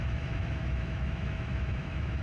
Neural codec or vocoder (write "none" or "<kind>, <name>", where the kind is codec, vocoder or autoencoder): autoencoder, DAC-VAE